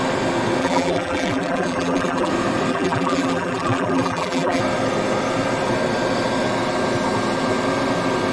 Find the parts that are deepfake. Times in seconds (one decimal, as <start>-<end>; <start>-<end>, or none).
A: 0.6-2.3; 2.7-4.6